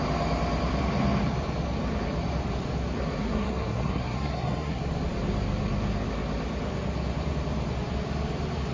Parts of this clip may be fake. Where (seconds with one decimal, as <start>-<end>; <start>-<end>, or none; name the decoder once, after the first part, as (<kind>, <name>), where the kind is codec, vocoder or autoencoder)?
3.2-4.8 (codec, SNAC)